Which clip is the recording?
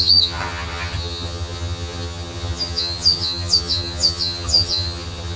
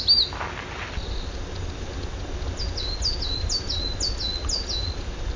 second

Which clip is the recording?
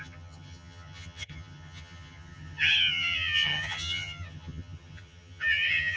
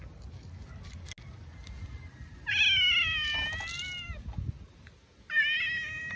second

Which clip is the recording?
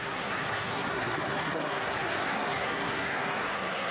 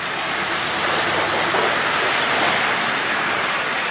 second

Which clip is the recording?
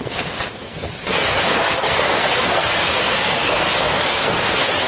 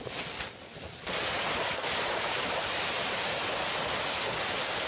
second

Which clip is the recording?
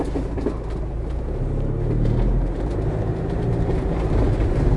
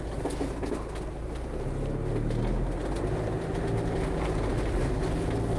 second